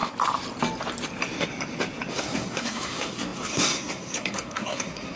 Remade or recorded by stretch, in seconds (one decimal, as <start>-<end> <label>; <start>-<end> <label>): 0.0-2.1 recorded; 2.1-5.2 remade